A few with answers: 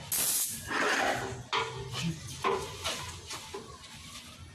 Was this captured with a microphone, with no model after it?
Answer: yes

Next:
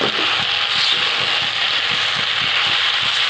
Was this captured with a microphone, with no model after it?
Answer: yes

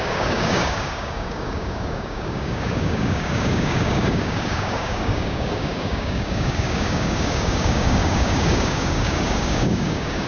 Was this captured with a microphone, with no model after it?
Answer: no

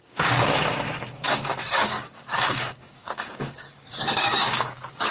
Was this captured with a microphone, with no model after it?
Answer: no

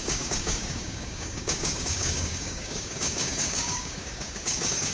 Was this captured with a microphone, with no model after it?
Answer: no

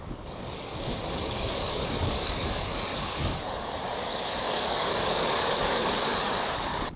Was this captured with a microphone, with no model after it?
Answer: no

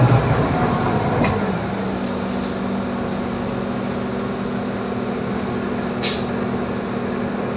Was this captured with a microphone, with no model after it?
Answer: yes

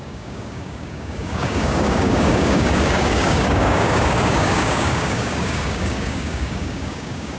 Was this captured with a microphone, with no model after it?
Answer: no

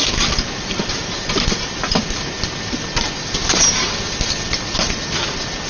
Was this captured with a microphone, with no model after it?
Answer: yes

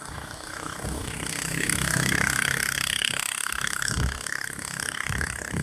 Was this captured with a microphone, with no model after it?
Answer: no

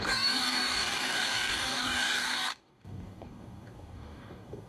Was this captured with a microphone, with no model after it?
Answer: no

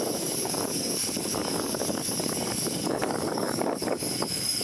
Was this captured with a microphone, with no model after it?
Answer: no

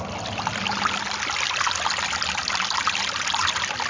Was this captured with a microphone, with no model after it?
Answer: yes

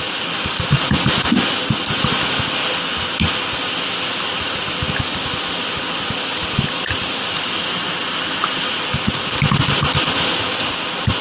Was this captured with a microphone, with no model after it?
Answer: yes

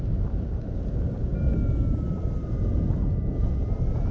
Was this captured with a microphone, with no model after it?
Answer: yes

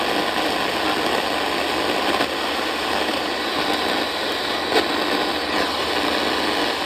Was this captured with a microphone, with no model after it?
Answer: yes